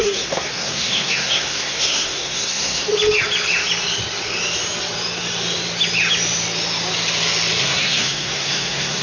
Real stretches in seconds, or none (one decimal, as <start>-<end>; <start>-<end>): 2.9-7.6